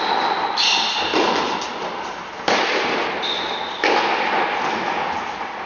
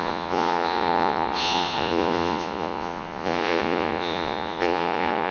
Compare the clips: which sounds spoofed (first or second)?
second